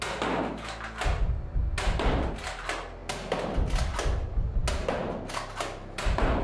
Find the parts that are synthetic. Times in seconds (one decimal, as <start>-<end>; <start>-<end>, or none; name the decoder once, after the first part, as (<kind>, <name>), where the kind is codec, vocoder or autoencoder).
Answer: 3.0-3.9 (vocoder, BigVGAN v2)